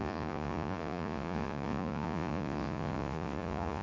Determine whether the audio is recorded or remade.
remade